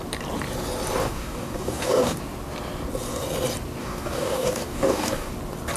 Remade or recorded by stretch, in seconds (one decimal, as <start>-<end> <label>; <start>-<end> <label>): 0.0-1.0 recorded; 1.0-2.2 remade; 2.2-3.8 recorded; 3.8-5.3 remade; 5.3-5.8 recorded